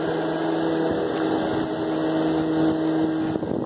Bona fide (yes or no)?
yes